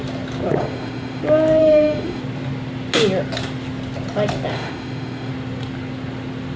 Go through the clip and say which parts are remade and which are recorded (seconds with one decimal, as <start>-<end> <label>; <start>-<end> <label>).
0.0-0.6 recorded; 0.6-1.2 remade; 1.2-1.6 recorded; 1.6-2.2 remade; 2.2-4.5 recorded; 4.5-5.3 remade; 5.3-6.6 recorded